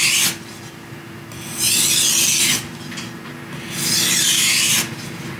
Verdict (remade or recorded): recorded